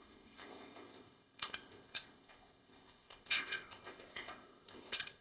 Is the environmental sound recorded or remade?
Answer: remade